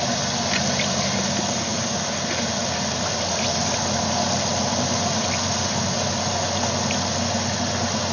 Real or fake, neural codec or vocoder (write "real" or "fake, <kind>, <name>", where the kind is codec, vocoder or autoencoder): real